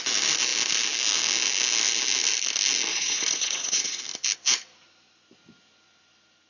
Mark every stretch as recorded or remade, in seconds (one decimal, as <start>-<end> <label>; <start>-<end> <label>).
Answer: 0.0-2.9 recorded; 2.9-4.0 remade; 4.0-6.5 recorded

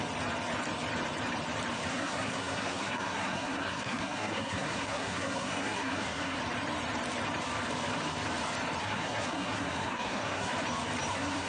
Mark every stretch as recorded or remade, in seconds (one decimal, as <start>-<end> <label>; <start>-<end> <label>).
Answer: 0.0-1.9 recorded; 1.9-6.4 remade; 6.4-8.8 recorded; 8.8-10.5 remade; 10.5-11.1 recorded; 11.1-11.5 remade

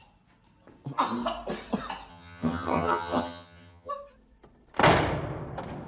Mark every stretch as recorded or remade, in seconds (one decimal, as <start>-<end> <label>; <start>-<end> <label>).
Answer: 0.0-2.1 recorded; 2.1-3.9 remade; 3.9-5.9 recorded